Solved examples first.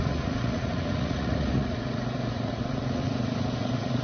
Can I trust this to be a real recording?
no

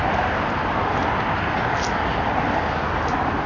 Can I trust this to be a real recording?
yes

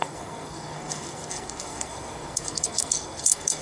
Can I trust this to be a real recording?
no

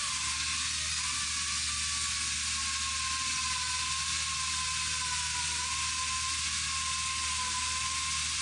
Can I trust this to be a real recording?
yes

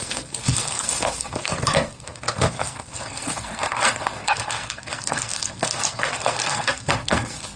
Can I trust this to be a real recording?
no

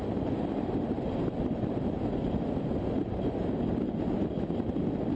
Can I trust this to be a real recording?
yes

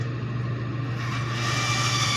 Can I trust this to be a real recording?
yes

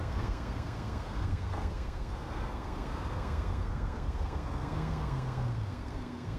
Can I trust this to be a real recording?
no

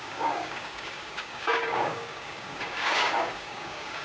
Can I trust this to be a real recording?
no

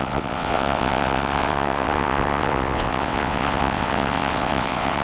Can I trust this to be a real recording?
no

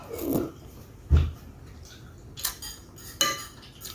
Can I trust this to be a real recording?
yes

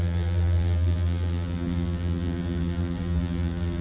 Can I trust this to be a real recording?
no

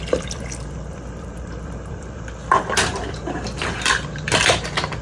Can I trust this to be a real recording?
no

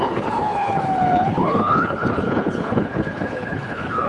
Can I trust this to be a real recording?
no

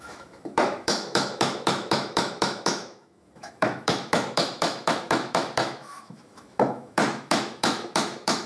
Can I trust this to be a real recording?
no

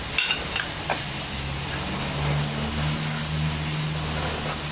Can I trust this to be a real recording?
yes